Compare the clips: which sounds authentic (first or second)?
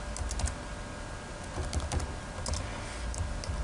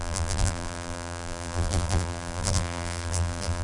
first